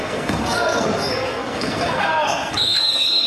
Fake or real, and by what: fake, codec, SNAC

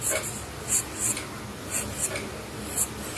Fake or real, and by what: real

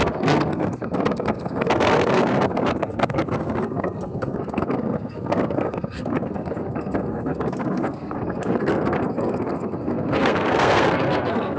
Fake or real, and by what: fake, codec, SNAC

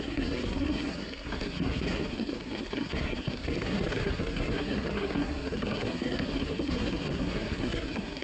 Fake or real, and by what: fake, codec, SNAC